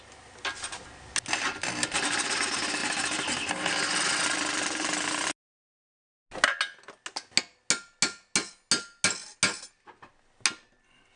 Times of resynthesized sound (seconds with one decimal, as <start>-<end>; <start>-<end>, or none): none